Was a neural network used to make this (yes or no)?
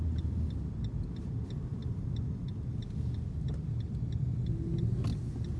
no